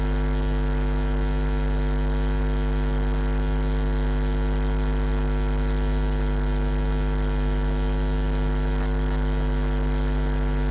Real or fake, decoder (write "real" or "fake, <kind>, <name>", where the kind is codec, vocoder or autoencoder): real